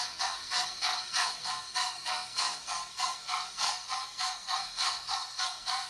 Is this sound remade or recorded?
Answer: remade